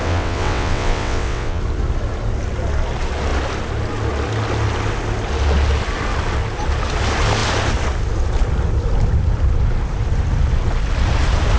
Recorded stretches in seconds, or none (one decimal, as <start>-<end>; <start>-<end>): 1.6-11.6